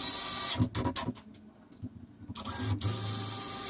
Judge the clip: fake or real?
real